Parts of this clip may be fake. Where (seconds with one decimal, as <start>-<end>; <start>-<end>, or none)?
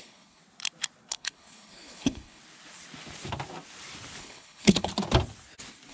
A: 0.0-0.4; 1.1-2.4; 4.2-4.9